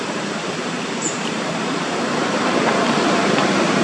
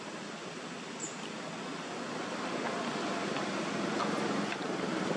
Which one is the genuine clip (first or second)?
second